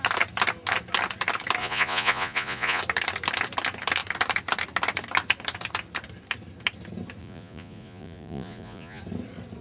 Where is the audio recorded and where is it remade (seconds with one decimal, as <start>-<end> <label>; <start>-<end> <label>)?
0.0-1.6 recorded; 1.6-2.8 remade; 2.8-7.2 recorded; 7.2-9.0 remade; 9.0-9.6 recorded